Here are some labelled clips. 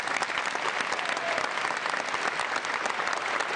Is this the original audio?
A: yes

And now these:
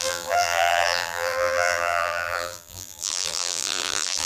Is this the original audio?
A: no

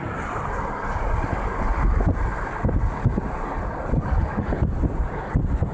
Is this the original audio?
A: yes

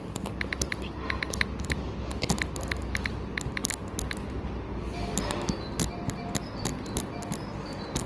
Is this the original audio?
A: yes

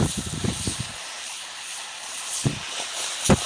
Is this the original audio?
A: no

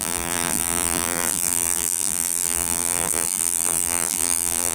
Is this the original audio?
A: no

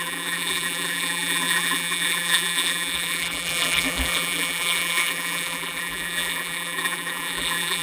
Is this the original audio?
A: no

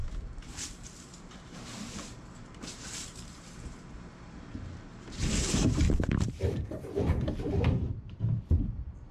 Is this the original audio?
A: no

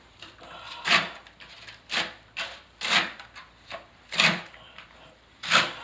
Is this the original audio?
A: no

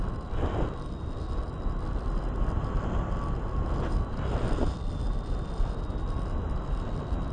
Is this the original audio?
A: yes